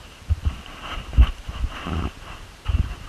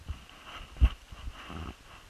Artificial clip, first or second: first